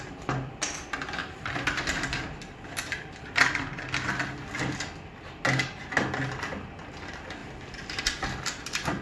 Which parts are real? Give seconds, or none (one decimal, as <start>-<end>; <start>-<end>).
0.0-1.2; 2.2-9.0

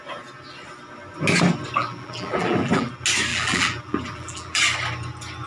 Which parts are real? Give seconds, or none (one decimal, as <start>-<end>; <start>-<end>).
0.0-1.8; 2.9-3.3; 4.6-5.5

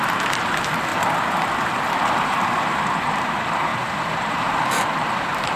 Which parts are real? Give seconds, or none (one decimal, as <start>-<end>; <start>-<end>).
0.9-1.6; 3.7-4.3

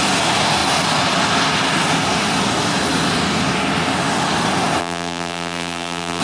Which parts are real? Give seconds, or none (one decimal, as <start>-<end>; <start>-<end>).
0.0-4.8

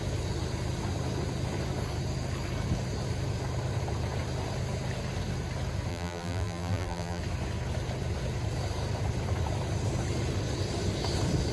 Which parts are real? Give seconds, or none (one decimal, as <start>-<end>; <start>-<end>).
0.0-5.9; 7.2-11.5

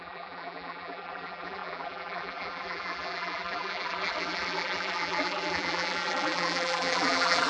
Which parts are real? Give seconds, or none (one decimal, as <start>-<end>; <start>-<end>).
none

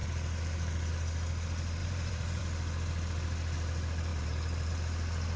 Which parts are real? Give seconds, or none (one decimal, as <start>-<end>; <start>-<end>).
0.0-1.8; 2.4-4.1; 4.7-5.4

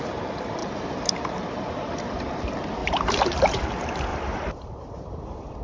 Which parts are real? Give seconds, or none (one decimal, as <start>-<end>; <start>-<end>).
0.0-0.6; 2.2-2.8; 3.6-4.1